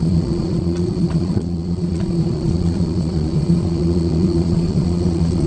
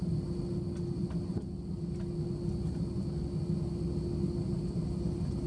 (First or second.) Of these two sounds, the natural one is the second